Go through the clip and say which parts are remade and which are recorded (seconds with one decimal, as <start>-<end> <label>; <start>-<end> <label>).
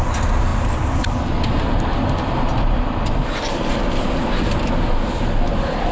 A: 0.0-5.9 recorded